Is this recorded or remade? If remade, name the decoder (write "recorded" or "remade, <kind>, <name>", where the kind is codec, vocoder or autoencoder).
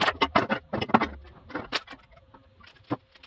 recorded